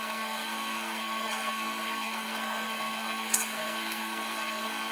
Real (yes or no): no